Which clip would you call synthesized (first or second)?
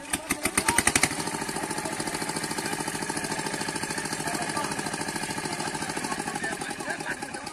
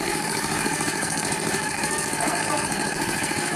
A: second